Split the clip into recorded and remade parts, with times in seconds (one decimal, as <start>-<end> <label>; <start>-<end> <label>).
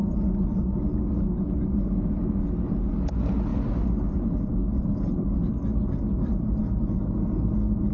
0.0-7.9 recorded